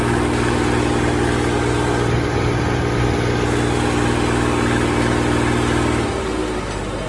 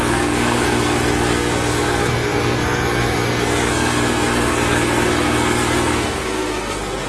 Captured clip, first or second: first